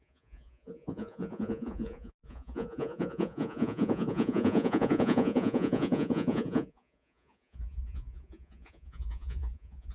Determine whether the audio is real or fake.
fake